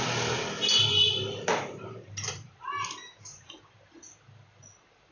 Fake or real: real